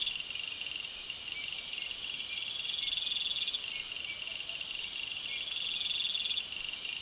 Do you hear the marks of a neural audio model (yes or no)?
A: no